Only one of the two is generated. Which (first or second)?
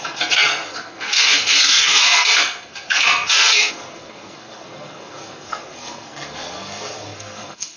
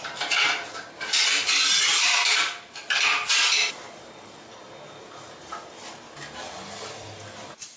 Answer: first